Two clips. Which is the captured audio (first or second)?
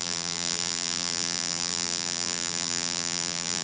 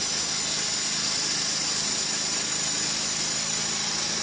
second